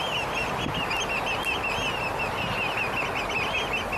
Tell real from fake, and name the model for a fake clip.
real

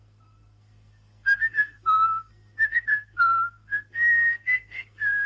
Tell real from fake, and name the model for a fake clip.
fake, codec, SNAC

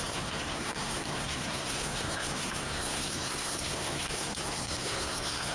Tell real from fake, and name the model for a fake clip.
fake, codec, SNAC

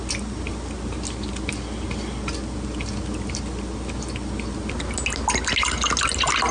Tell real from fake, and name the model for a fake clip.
real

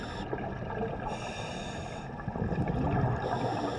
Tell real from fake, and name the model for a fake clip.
real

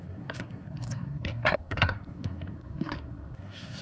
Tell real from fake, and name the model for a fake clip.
fake, codec, SNAC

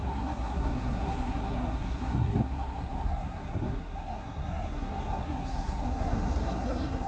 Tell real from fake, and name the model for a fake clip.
fake, codec, SNAC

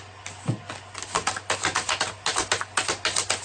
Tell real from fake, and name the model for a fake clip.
real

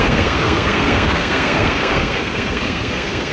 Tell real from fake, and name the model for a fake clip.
fake, codec, SNAC